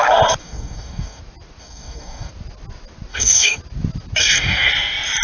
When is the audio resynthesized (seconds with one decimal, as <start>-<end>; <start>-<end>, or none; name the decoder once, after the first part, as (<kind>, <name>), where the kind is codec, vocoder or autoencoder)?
0.4-1.2 (codec, DAC); 1.6-2.3; 3.1-3.6; 4.2-4.7